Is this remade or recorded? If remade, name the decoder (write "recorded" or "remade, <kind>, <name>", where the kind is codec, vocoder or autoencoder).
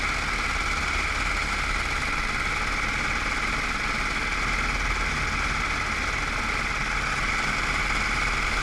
recorded